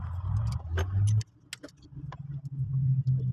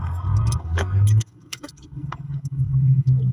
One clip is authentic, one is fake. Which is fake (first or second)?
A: second